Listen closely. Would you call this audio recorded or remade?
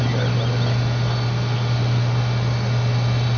recorded